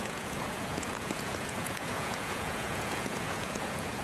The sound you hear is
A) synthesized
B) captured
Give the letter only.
A